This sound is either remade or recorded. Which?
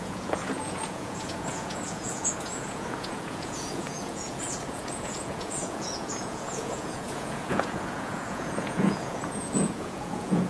remade